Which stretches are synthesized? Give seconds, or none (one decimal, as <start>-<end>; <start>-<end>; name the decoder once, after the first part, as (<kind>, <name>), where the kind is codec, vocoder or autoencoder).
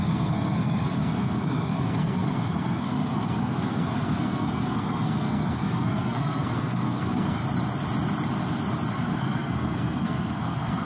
0.0-7.4 (codec, SNAC); 8.9-10.8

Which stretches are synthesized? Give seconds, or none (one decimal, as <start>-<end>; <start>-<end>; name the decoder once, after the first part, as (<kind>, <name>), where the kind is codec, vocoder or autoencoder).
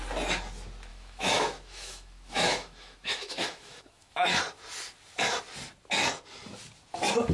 0.9-4.4 (autoencoder, DAC-VAE)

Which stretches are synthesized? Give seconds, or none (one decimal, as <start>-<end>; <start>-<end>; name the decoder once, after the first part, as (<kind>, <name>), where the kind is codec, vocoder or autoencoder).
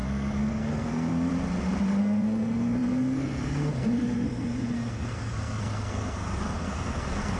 0.0-1.3 (codec, SNAC); 2.0-7.4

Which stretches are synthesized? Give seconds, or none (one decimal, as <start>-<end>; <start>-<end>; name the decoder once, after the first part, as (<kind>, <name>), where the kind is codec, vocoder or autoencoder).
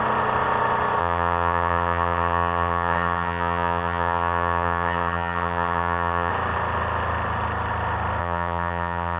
1.0-6.3 (vocoder, HiFi-GAN); 8.2-9.2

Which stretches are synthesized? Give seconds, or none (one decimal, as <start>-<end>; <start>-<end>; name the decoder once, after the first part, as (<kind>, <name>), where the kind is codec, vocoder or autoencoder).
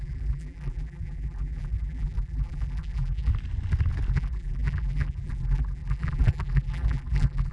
0.0-3.3 (vocoder, BigVGAN v2); 4.1-7.5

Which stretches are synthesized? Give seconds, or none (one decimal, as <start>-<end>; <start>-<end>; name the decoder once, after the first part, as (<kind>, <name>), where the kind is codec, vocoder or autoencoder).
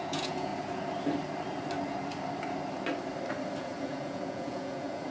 0.0-0.5 (vocoder, Vocos); 3.6-5.1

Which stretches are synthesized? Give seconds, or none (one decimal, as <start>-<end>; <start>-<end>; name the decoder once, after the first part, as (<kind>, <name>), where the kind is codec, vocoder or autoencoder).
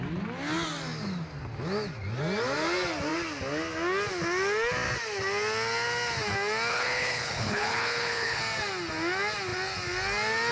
6.7-8.4 (codec, HILCodec)